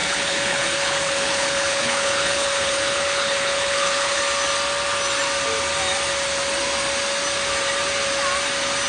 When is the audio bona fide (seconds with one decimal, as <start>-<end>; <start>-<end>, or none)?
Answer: 4.2-8.9